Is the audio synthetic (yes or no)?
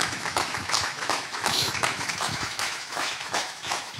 yes